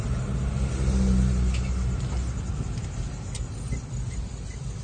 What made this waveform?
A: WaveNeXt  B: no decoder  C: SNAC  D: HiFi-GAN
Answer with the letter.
B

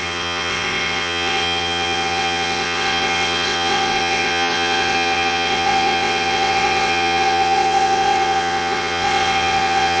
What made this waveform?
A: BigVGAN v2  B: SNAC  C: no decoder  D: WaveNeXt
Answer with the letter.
D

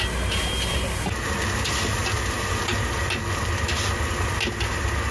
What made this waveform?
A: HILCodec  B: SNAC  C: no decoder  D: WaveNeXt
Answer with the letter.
C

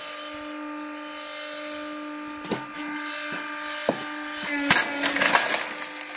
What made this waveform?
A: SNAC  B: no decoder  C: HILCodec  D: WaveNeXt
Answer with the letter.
B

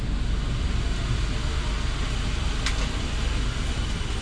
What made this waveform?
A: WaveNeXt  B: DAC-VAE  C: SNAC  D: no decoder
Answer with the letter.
D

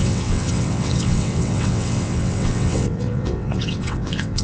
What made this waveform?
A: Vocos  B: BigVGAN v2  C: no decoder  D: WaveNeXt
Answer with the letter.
D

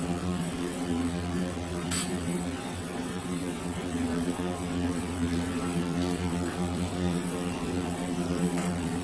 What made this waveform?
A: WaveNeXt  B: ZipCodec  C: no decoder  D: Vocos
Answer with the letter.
A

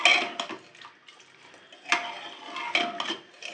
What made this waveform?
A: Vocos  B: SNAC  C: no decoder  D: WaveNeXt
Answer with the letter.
C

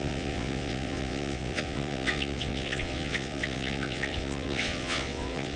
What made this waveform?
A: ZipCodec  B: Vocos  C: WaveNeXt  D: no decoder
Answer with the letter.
C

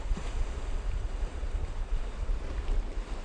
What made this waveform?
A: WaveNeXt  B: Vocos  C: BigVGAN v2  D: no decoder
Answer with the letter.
D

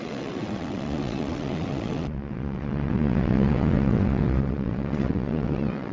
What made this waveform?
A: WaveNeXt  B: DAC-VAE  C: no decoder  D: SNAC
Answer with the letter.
A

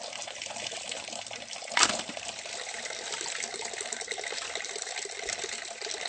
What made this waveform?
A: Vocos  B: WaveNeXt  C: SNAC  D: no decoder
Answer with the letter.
D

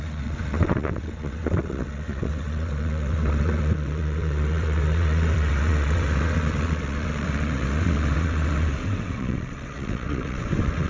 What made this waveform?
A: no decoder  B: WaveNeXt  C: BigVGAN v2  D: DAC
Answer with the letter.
B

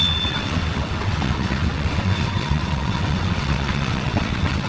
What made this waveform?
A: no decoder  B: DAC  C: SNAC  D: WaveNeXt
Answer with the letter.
D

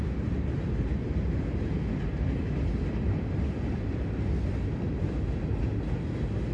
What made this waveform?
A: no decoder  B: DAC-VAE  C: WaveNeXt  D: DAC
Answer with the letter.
A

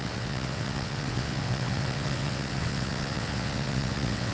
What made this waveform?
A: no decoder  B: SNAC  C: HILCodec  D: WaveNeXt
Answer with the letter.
D